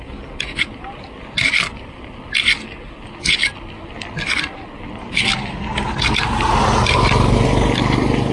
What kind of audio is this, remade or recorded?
recorded